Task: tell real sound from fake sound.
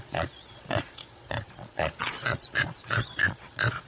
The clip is fake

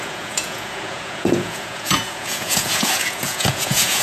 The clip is fake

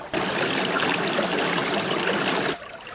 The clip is real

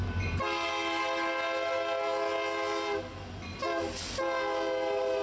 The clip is real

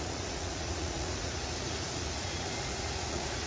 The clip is fake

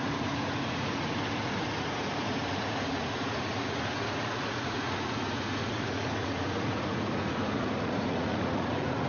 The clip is fake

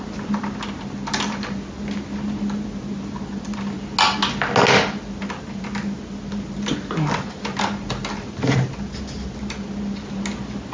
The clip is real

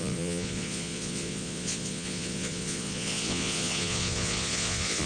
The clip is fake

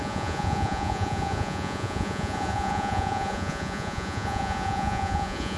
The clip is fake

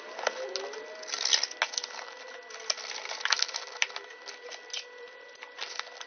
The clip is real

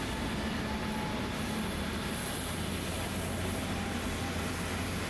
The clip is real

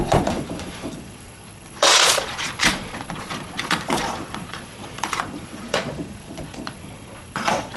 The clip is fake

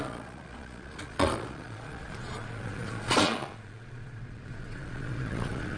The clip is fake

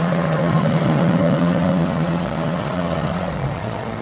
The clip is fake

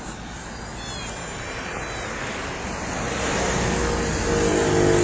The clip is real